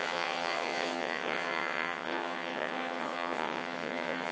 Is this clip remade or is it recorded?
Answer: remade